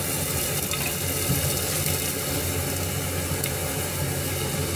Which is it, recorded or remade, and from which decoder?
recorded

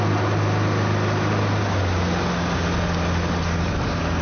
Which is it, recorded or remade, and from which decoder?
recorded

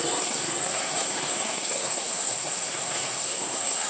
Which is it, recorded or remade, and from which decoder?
remade, codec, SNAC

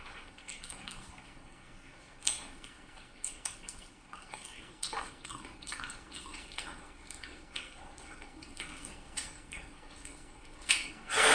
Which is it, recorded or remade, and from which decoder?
remade, codec, SNAC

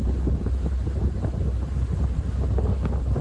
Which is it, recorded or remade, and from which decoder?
recorded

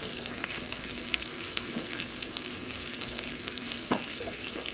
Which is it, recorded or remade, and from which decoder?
remade, codec, SNAC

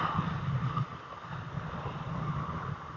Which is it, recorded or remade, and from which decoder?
recorded